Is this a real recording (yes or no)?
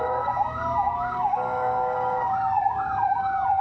no